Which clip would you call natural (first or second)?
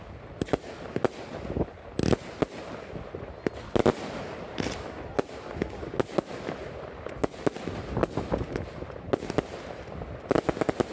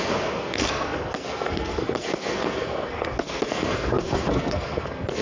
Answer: first